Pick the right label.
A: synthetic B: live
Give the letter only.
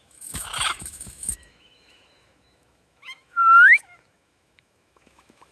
A